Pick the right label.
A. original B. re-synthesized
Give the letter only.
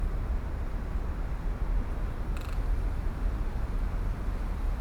A